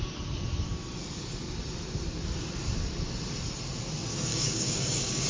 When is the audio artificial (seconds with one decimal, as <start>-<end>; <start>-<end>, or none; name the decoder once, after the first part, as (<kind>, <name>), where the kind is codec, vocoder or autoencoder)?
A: 4.3-5.3 (codec, DAC)